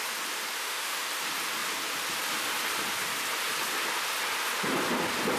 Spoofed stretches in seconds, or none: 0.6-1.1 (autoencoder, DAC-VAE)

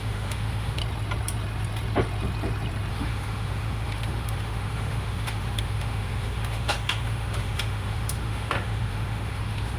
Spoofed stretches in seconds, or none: 0.0-0.8 (autoencoder, DAC-VAE); 2.9-9.8

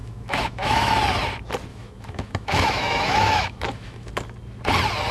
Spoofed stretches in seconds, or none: 0.0-0.9 (autoencoder, DAC-VAE); 1.7-4.1

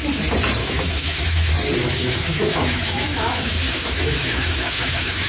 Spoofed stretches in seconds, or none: 0.6-1.5 (autoencoder, DAC-VAE); 2.0-5.3